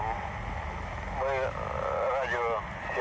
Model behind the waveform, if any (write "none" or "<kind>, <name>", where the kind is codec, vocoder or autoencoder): none